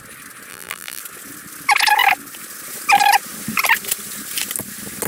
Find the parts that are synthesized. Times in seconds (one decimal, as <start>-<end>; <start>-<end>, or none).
0.5-1.0

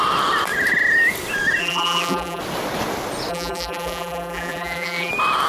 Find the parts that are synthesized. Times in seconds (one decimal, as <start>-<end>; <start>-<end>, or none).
1.6-2.4; 3.3-5.1